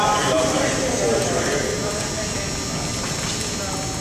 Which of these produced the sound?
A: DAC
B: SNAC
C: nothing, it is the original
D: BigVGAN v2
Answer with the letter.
C